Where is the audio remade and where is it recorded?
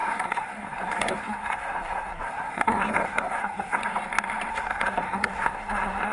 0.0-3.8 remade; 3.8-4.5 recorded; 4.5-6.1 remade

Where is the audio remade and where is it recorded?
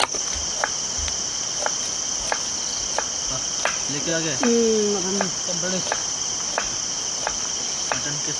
0.0-8.4 recorded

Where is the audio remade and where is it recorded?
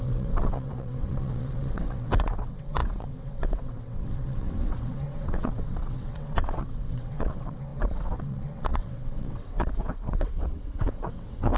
0.0-11.6 remade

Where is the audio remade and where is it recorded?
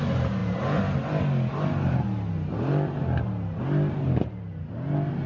0.0-5.3 recorded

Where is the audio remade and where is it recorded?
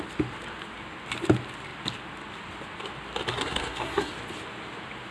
0.0-3.3 recorded; 3.3-4.1 remade; 4.1-5.1 recorded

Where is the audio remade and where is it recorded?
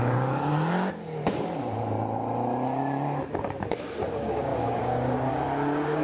0.0-0.5 remade; 0.5-4.1 recorded; 4.1-6.0 remade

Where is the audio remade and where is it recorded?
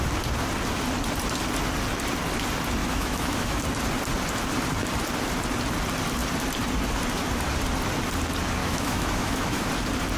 0.0-2.8 recorded; 2.8-3.6 remade; 3.6-8.6 recorded; 8.6-9.7 remade; 9.7-10.2 recorded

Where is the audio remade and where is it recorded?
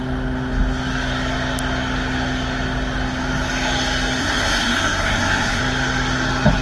0.0-4.2 recorded; 4.2-5.6 remade; 5.6-6.6 recorded